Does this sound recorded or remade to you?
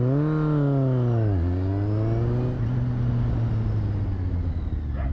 recorded